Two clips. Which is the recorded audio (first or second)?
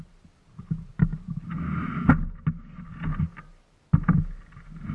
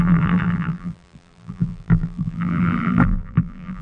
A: first